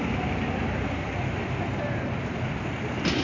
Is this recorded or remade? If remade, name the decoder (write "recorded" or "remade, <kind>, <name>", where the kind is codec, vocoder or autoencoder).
recorded